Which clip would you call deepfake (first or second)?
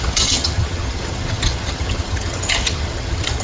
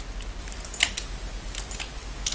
first